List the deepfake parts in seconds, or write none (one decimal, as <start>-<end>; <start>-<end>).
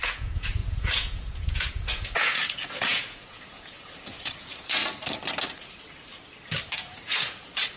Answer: 0.0-4.8; 6.7-7.8